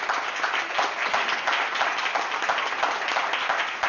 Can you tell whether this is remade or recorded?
recorded